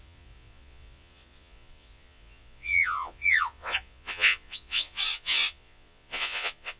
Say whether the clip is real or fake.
fake